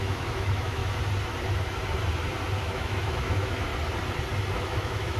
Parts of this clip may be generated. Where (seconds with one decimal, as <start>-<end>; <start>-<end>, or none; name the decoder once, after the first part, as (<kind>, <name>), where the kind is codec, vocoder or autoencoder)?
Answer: 0.0-0.8 (autoencoder, DAC-VAE); 2.6-3.7; 4.6-5.2